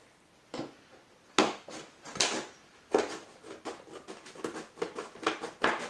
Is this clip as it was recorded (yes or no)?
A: yes